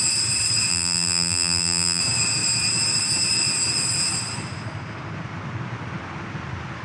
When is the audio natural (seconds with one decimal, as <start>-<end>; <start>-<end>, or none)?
0.0-0.7; 2.0-6.8